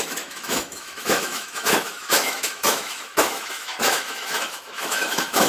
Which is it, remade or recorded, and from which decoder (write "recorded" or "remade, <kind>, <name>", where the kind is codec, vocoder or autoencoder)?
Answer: remade, autoencoder, DAC-VAE